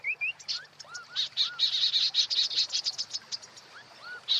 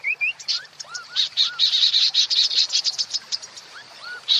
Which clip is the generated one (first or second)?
second